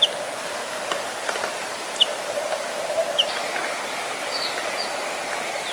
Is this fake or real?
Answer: real